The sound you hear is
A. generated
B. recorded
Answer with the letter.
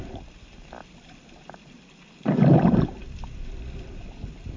B